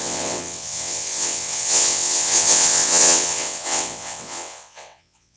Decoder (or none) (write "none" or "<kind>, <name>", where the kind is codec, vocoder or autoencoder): vocoder, WaveNeXt